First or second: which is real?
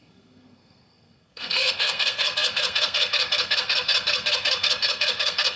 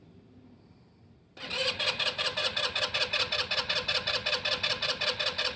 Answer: second